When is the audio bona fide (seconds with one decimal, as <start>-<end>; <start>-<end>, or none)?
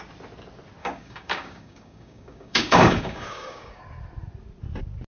0.0-0.8; 3.8-5.1